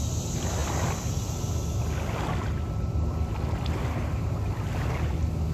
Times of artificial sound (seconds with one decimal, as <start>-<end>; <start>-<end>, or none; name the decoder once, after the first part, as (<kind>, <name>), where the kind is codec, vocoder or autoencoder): none